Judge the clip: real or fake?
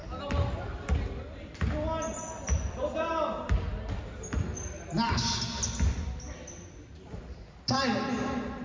real